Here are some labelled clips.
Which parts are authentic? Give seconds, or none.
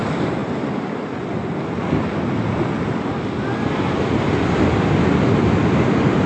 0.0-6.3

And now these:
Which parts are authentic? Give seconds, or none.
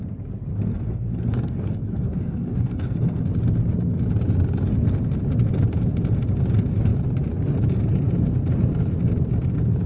0.0-0.5; 3.2-9.9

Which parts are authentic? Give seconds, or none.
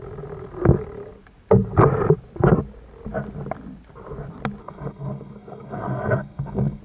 0.0-4.6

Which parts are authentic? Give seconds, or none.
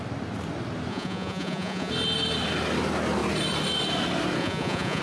0.0-0.9; 1.9-4.4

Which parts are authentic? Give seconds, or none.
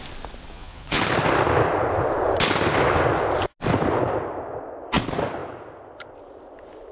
0.0-0.5; 1.0-6.9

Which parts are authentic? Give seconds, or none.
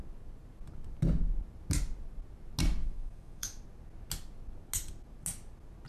0.0-2.8; 3.6-5.9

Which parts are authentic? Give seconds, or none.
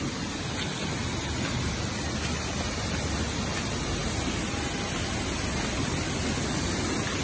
0.0-7.2